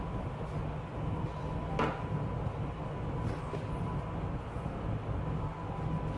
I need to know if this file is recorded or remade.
recorded